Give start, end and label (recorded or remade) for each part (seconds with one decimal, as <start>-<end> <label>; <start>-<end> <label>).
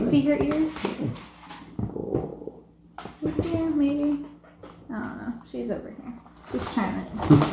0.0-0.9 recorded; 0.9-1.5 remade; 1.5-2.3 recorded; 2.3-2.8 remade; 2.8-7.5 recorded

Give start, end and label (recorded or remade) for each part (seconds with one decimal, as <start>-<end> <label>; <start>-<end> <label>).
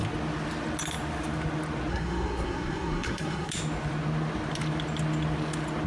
0.0-1.9 recorded; 1.9-3.5 remade; 3.5-5.9 recorded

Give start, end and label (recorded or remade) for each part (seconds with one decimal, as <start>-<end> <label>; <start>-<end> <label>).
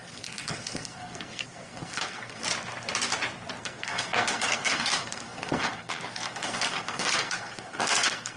0.0-2.4 remade; 2.4-3.6 recorded; 3.6-8.4 remade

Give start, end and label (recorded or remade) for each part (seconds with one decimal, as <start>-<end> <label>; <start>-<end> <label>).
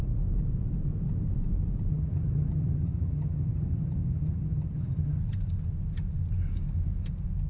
0.0-1.9 recorded; 1.9-5.2 remade; 5.2-7.5 recorded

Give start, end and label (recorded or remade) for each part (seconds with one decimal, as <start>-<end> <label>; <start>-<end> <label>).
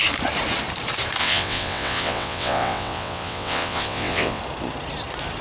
0.0-1.2 recorded; 1.2-4.4 remade; 4.4-5.4 recorded